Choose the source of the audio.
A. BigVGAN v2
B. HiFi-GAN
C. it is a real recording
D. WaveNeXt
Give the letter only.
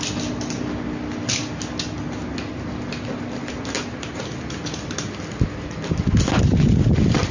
C